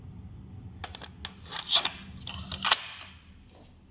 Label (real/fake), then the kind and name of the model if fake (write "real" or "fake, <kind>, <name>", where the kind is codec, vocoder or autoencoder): real